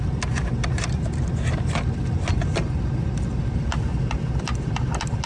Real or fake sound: real